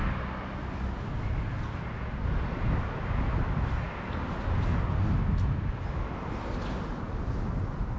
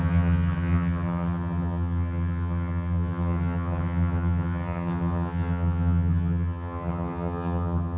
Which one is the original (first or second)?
first